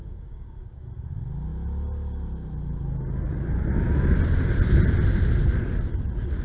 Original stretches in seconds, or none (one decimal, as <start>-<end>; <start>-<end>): 0.9-6.4

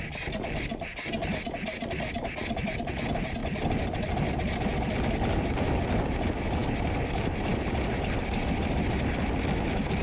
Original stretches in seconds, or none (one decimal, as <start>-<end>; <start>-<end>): 0.0-10.0